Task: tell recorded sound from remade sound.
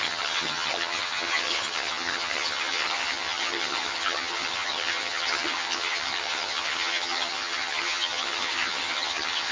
remade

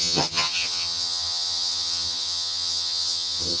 remade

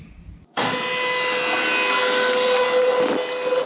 recorded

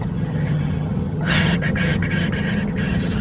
remade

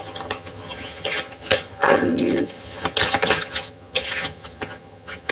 remade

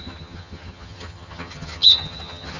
remade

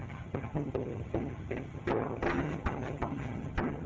remade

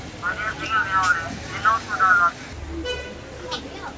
recorded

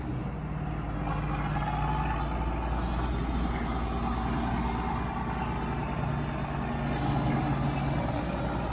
recorded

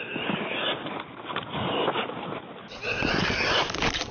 recorded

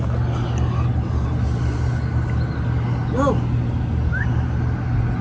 recorded